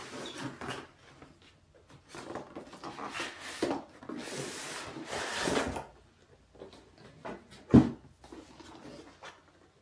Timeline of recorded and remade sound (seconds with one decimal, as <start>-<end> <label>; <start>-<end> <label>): 0.0-4.0 remade; 4.0-9.8 recorded